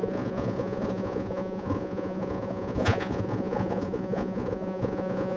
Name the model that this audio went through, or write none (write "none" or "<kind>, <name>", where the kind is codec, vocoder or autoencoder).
vocoder, Vocos